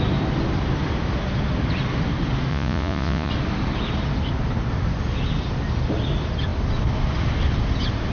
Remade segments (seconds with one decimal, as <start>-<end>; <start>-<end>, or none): 2.5-3.3